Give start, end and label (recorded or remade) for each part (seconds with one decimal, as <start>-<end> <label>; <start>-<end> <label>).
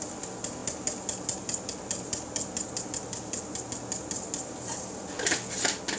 0.0-6.0 recorded